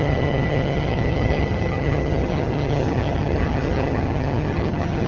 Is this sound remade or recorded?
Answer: remade